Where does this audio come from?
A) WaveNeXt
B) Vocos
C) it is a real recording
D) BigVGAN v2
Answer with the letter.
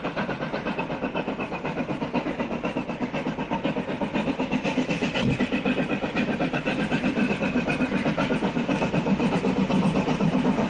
C